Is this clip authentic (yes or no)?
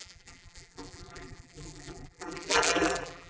no